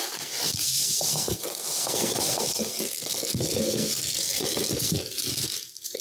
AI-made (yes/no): yes